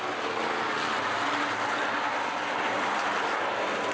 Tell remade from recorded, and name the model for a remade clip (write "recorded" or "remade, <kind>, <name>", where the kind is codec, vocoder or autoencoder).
recorded